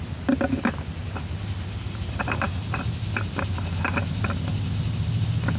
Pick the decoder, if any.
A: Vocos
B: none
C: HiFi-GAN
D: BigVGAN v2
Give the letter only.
B